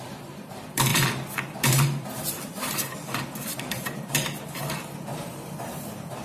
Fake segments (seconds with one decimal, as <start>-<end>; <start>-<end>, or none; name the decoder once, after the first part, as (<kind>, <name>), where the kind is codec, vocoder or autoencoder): 0.0-6.2 (vocoder, BigVGAN v2)